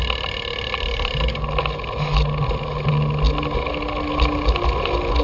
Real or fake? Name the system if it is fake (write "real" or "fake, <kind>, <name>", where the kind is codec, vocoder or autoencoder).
real